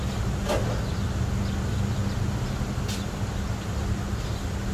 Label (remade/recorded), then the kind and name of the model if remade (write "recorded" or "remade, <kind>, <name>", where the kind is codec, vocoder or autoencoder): recorded